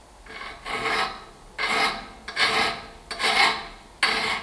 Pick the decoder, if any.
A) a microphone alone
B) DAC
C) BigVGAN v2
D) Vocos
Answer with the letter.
A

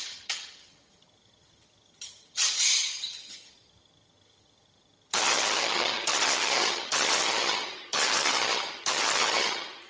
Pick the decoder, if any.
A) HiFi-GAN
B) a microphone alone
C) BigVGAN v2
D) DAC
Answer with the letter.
A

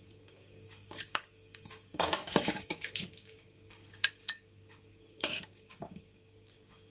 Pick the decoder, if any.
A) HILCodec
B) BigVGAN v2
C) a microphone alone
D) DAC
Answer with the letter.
D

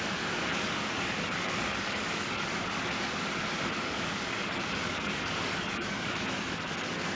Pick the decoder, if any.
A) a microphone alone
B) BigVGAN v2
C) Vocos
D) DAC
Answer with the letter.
D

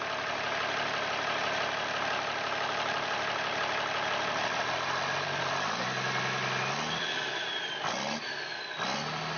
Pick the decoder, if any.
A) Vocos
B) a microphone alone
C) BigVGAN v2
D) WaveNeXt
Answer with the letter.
B